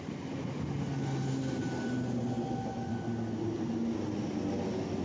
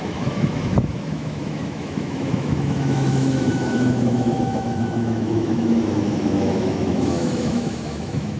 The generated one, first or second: second